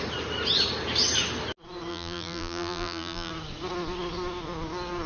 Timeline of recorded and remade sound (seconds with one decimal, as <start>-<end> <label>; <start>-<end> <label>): 0.0-1.9 recorded; 1.9-3.3 remade; 3.3-5.1 recorded